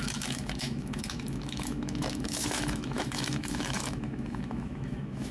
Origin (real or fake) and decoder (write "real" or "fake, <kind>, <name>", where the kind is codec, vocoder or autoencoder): fake, autoencoder, DAC-VAE